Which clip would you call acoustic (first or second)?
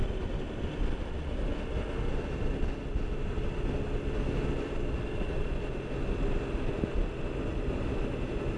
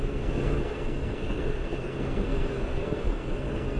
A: first